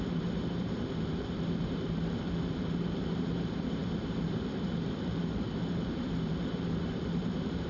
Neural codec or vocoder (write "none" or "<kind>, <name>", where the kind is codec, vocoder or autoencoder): vocoder, BigVGAN v2